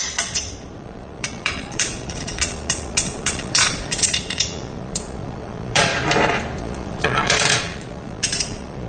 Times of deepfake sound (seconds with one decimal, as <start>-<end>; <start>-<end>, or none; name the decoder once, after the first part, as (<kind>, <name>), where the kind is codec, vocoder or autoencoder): 0.0-5.9 (vocoder, Vocos); 6.6-8.9